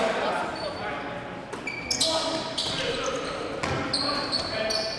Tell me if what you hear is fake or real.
real